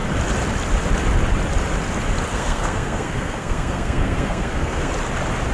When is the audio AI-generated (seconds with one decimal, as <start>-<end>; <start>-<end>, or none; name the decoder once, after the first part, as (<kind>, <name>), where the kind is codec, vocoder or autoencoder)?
2.3-4.9 (codec, SNAC)